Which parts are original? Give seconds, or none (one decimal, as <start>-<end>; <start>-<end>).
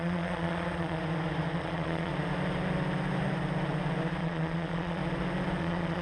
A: 1.0-1.6; 2.1-4.2; 5.0-5.6